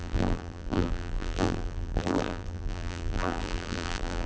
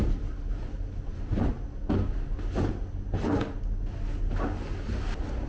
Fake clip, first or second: first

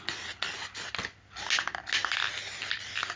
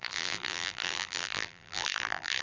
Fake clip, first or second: second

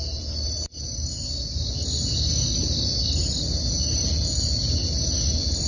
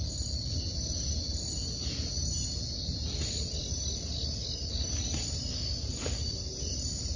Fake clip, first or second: second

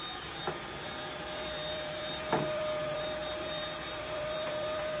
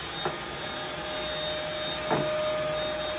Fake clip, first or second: first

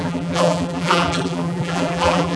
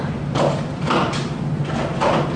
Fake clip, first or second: first